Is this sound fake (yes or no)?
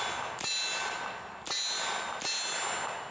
no